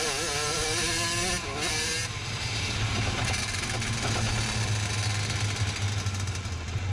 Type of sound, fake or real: real